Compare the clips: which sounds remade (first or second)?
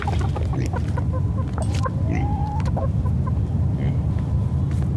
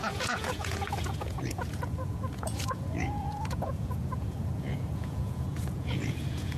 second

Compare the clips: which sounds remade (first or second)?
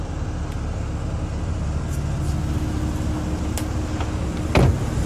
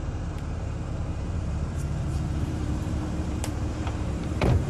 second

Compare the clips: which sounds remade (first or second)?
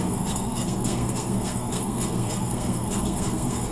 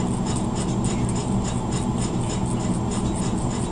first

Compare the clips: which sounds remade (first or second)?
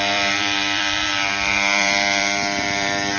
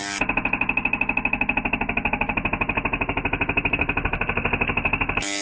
first